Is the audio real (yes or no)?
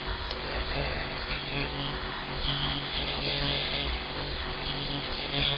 no